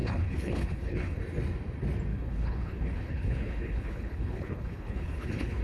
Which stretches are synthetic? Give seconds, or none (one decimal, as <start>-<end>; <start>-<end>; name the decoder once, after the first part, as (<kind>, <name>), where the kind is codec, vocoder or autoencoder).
0.0-1.2 (codec, HILCodec); 2.1-5.6